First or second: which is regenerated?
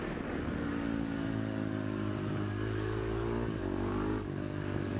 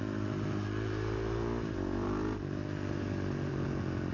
first